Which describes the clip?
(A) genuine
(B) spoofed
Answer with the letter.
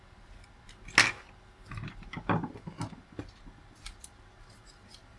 A